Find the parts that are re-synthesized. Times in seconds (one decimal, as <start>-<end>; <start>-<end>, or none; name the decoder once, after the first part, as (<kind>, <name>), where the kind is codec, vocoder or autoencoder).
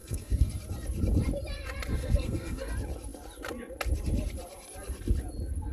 0.0-0.5 (codec, SNAC); 1.9-2.7